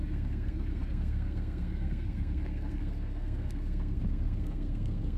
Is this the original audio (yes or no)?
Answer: no